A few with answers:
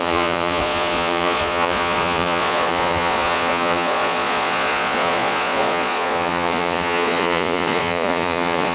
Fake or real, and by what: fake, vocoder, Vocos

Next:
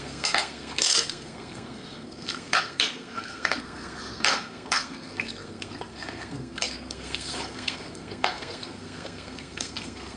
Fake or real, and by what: fake, codec, SNAC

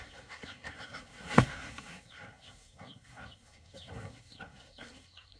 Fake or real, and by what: fake, codec, SNAC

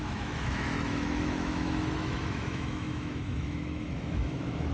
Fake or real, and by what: fake, autoencoder, DAC-VAE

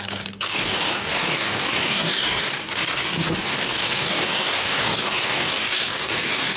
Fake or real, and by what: fake, codec, DAC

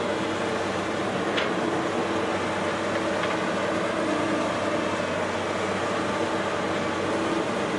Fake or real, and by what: real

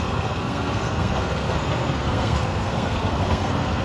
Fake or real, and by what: fake, codec, SNAC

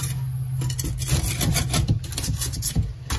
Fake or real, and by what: real